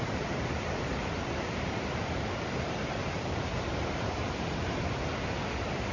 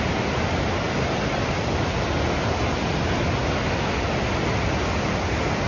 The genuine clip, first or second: second